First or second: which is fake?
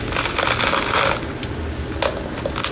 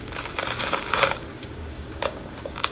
second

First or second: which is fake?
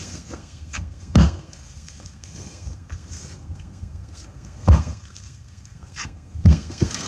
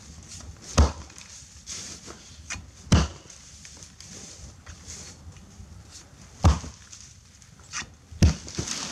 first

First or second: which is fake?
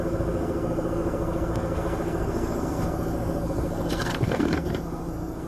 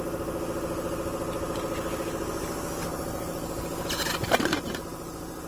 first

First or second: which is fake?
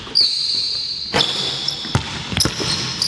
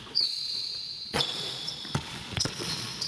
second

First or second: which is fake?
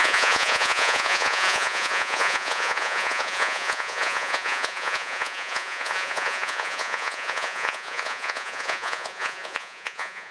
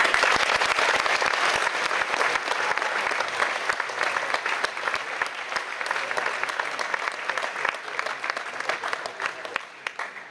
first